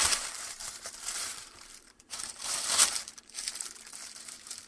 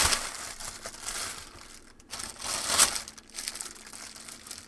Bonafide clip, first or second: second